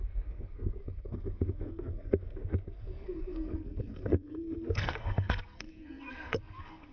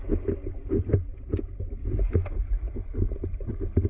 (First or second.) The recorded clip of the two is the second